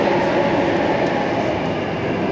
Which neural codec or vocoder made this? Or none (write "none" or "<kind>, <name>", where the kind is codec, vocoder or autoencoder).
none